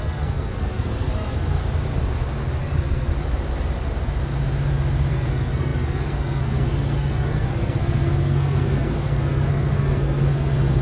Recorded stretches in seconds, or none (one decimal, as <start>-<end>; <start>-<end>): 1.6-2.6; 3.1-5.1